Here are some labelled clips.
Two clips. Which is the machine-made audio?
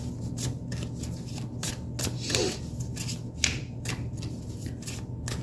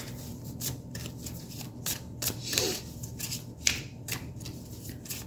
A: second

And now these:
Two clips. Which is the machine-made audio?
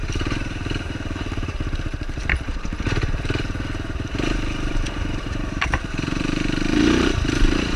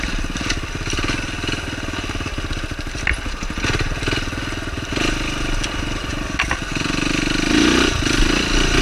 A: first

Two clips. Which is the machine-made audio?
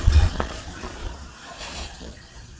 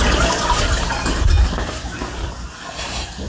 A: first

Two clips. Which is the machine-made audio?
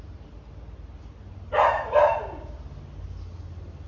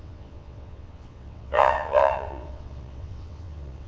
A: second